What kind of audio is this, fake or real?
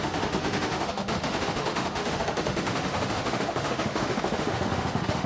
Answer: fake